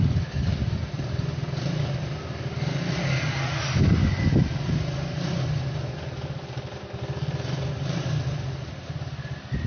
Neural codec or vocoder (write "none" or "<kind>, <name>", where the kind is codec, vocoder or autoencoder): none